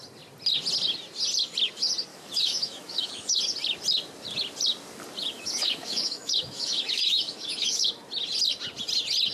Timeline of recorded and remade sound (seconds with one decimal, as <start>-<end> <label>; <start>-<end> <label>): 0.0-2.1 recorded; 2.1-3.4 remade; 3.4-5.2 recorded; 5.2-7.9 remade; 7.9-9.3 recorded